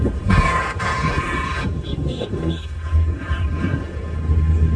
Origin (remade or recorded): remade